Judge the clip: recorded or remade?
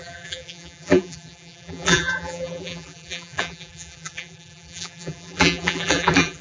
remade